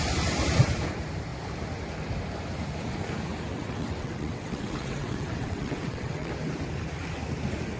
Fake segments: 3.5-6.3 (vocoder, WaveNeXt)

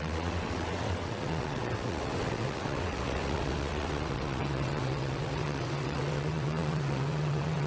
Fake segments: 0.0-7.7 (vocoder, WaveNeXt)

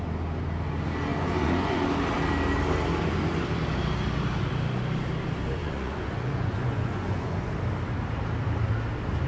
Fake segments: 1.1-1.8 (vocoder, Vocos); 5.6-7.5

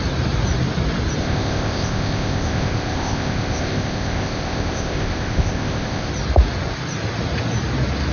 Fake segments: 1.2-6.1 (codec, ZipCodec)

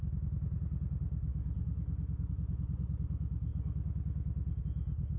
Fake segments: 1.3-2.3 (codec, DAC)

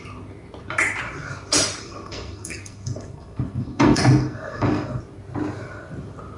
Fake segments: 1.8-5.0 (codec, SNAC)